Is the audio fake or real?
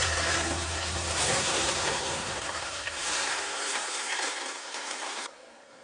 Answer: fake